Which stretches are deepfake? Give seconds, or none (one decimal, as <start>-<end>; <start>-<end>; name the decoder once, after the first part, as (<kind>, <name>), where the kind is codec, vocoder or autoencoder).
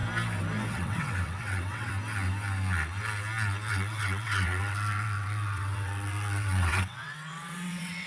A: 0.7-1.9 (vocoder, WaveNeXt); 3.7-8.1